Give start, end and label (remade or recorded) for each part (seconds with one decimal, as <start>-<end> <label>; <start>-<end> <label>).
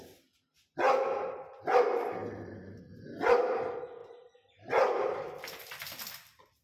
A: 0.0-4.0 recorded; 4.0-5.6 remade; 5.6-6.6 recorded